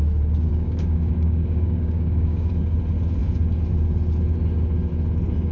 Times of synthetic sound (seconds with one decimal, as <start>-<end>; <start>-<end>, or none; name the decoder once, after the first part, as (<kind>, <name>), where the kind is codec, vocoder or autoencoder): 0.5-2.5 (codec, DAC)